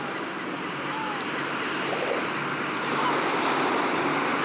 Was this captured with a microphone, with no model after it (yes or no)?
yes